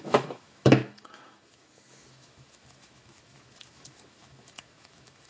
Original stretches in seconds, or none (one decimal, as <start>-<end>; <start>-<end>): none